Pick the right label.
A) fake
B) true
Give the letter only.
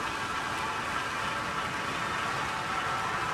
B